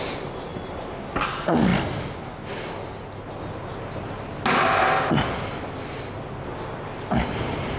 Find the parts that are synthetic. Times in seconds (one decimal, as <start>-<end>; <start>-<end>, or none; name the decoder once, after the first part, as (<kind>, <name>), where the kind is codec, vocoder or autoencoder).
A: none